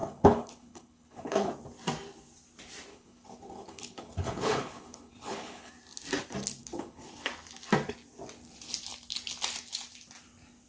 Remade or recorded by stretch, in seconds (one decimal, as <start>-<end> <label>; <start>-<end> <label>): 0.0-1.5 remade; 1.5-2.9 recorded; 2.9-5.7 remade; 5.7-6.6 recorded; 6.6-7.3 remade; 7.3-10.7 recorded